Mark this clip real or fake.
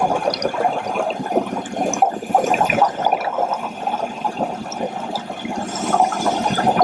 real